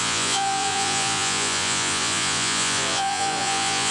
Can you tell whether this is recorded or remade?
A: remade